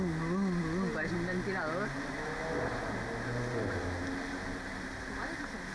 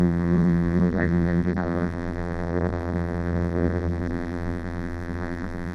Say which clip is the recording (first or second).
first